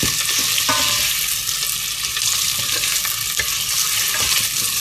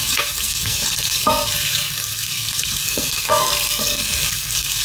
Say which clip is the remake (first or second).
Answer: second